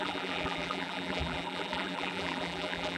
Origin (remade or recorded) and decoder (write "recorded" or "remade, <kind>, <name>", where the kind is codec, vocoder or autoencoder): remade, vocoder, BigVGAN v2